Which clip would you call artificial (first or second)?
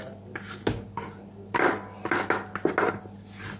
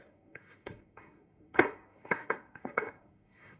second